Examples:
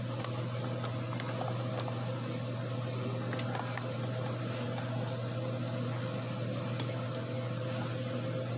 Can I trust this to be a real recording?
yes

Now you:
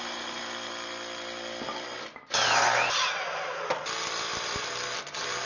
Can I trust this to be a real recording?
yes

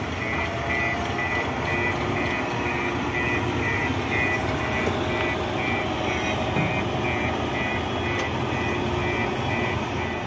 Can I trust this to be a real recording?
yes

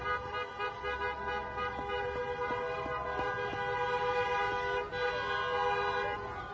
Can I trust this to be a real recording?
yes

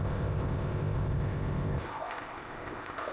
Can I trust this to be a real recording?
no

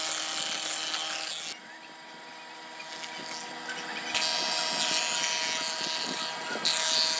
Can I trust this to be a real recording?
yes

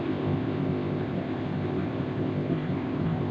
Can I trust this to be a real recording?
no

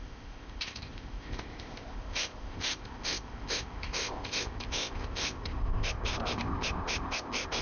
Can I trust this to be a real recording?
no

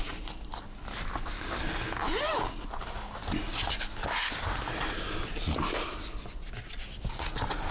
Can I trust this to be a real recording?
yes